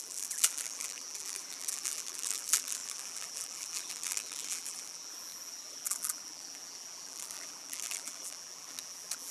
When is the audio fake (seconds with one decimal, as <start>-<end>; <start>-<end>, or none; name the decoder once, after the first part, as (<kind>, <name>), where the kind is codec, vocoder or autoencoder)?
0.0-9.3 (vocoder, BigVGAN v2)